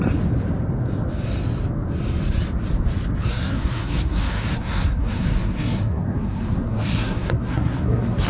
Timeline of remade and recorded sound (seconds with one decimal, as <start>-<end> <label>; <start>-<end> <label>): 0.0-3.3 recorded; 3.3-8.3 remade